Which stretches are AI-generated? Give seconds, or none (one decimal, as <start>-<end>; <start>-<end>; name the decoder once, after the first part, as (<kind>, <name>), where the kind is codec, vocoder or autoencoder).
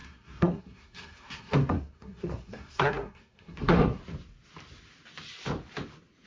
0.0-4.0 (codec, SNAC)